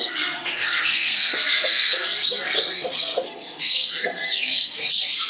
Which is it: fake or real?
fake